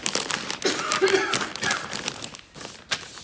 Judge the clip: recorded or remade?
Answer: recorded